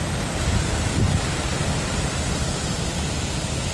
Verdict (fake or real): real